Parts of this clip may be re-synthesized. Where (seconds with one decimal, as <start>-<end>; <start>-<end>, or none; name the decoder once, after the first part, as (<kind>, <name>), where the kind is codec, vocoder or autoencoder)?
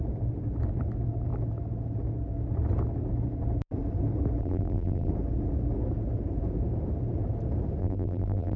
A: 4.4-5.1 (vocoder, BigVGAN v2); 7.8-8.6